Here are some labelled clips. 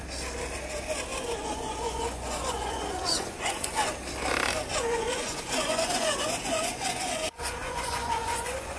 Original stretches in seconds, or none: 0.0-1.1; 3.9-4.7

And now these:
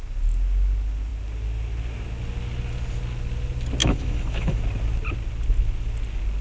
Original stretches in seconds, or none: 0.0-3.8; 4.6-6.4

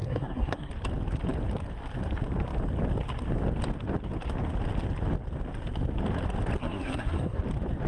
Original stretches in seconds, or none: 0.7-6.6; 7.4-7.9

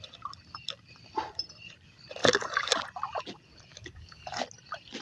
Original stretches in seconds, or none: 0.0-2.2; 2.7-3.7; 4.4-5.0

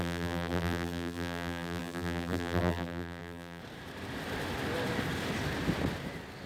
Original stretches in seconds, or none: 3.6-6.5

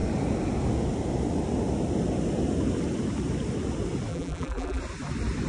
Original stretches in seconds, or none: 0.0-4.1; 4.8-5.5